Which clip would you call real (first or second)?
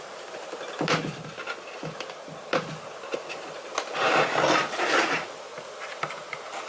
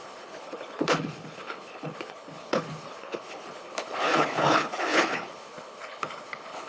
first